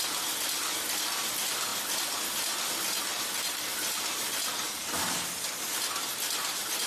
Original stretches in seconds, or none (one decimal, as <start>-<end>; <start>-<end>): 0.0-3.1; 4.4-6.9